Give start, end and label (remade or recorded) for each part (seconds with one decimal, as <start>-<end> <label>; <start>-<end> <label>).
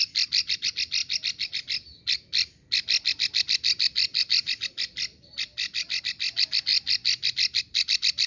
0.0-8.3 recorded